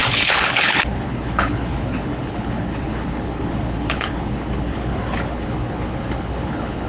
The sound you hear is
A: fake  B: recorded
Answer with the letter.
A